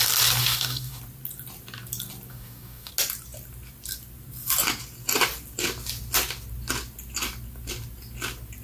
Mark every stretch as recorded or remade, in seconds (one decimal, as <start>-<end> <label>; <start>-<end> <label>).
0.0-0.4 recorded; 0.4-1.0 remade; 1.0-2.3 recorded; 2.3-2.9 remade; 2.9-8.6 recorded